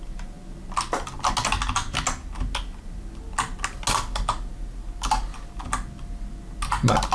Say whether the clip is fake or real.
real